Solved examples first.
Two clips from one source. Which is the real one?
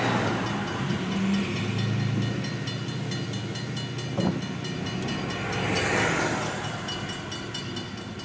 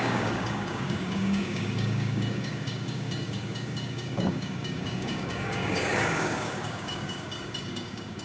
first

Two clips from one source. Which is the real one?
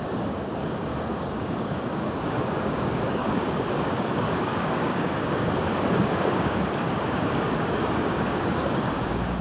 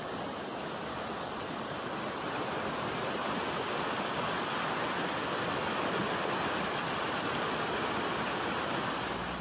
second